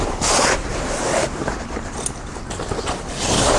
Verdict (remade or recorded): recorded